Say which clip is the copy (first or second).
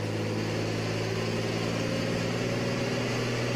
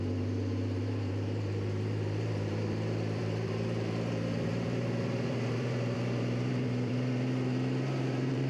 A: second